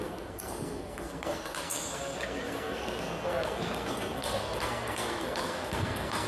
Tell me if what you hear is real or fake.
fake